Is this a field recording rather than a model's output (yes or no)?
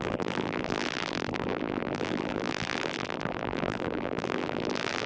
no